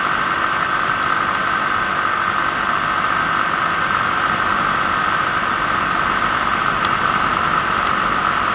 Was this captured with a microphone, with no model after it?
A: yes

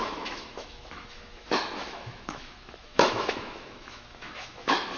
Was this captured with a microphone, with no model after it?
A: no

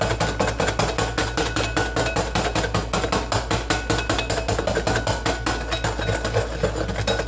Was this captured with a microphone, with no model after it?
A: yes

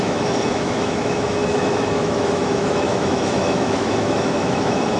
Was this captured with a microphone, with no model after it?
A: no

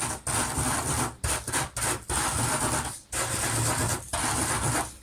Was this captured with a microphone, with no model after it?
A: yes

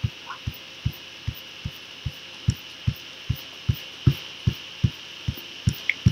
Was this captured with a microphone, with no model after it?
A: yes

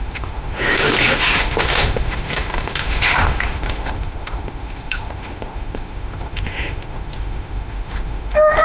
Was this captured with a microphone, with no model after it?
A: no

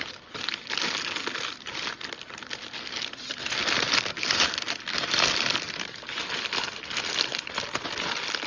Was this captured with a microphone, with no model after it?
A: yes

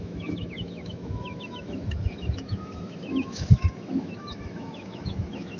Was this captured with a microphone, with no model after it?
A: no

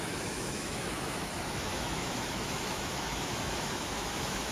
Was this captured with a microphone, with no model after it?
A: no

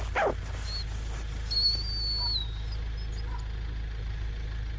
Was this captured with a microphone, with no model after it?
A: yes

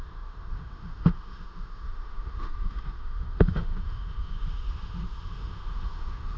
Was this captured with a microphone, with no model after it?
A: no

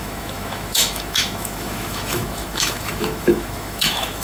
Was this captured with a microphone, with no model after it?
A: no